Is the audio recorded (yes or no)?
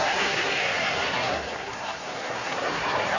no